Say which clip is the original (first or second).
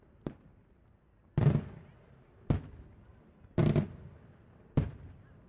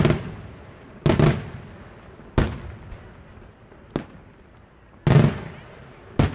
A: second